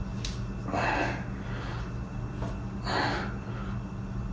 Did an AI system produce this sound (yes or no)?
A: no